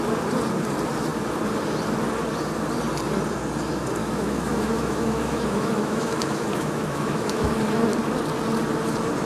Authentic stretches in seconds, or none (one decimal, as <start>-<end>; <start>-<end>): 0.0-4.0; 7.5-9.3